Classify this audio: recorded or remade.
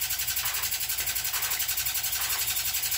recorded